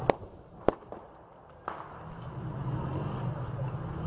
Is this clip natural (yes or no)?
yes